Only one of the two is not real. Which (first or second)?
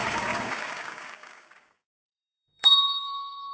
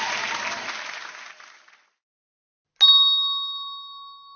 first